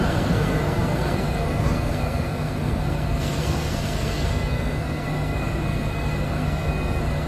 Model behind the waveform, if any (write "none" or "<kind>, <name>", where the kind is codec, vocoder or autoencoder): codec, SNAC